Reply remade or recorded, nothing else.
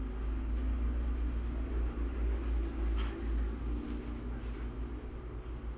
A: recorded